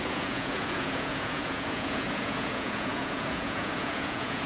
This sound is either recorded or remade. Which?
remade